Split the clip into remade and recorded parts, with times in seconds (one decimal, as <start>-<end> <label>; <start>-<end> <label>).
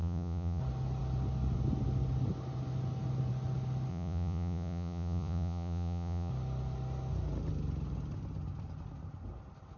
0.0-0.6 remade; 0.6-3.9 recorded; 3.9-6.3 remade; 6.3-9.8 recorded